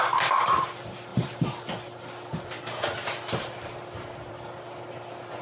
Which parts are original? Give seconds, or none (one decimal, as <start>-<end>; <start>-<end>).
0.0-5.4